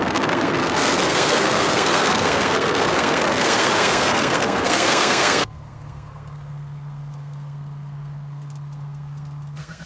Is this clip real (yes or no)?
no